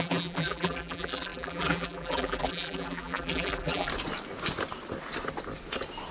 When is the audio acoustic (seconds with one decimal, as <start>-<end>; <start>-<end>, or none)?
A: 3.9-6.1